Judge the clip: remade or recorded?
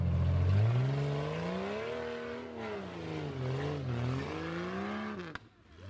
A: recorded